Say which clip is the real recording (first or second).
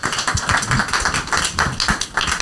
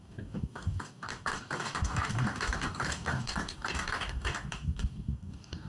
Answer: first